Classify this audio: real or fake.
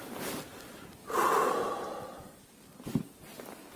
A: real